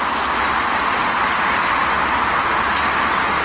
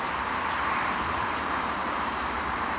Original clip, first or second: first